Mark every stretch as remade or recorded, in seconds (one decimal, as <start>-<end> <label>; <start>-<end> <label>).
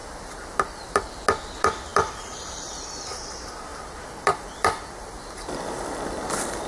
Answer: 0.0-1.2 remade; 1.2-1.9 recorded; 1.9-2.7 remade; 2.7-3.7 recorded; 3.7-6.7 remade